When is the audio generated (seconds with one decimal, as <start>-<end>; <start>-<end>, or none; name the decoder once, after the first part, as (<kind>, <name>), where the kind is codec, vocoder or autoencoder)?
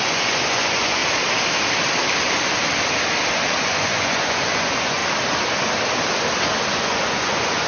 0.0-1.0 (vocoder, Vocos); 3.6-5.0; 6.7-7.7